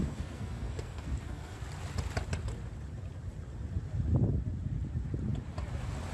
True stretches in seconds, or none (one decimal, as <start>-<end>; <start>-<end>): 1.6-6.1